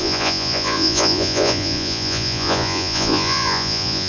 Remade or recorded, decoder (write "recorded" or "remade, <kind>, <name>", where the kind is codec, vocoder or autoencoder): remade, vocoder, Vocos